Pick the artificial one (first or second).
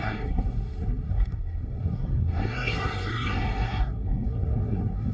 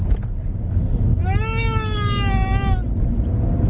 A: first